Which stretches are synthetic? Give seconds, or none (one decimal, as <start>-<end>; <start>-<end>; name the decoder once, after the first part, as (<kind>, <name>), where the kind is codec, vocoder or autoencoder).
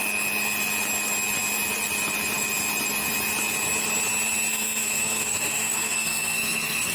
4.5-6.9 (codec, SNAC)